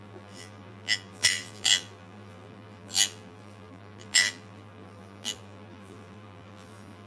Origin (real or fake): fake